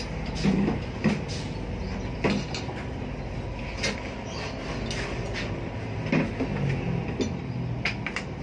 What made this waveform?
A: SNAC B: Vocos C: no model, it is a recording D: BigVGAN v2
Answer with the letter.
C